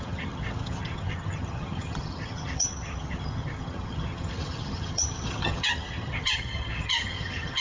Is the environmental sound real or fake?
fake